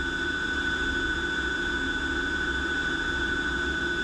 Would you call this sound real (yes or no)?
yes